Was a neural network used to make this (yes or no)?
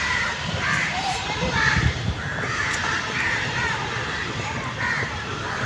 yes